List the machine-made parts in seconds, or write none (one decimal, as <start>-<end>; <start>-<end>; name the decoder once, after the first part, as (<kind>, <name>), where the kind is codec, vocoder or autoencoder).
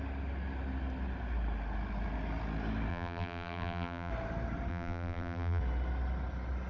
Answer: 2.9-4.1 (vocoder, BigVGAN v2); 4.7-5.6